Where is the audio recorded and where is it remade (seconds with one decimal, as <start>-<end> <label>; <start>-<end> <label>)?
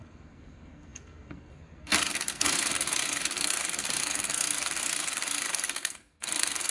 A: 0.0-6.7 remade